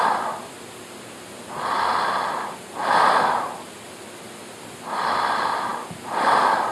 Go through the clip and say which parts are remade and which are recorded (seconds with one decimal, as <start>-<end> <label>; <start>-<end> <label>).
0.0-6.7 recorded